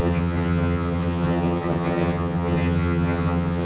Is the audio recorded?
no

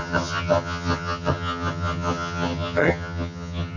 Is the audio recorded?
no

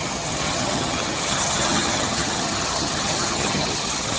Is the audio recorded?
no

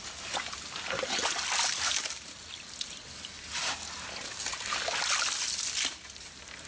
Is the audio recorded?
yes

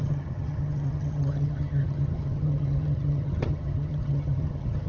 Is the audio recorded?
no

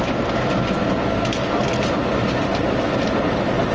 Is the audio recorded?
yes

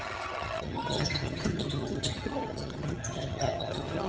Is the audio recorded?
no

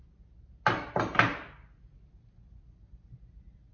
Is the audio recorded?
yes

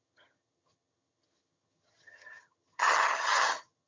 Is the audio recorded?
no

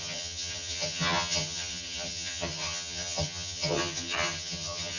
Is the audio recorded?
no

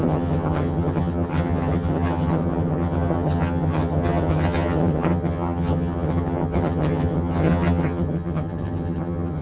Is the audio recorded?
no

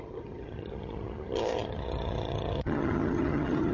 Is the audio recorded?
no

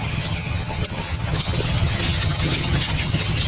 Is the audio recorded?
no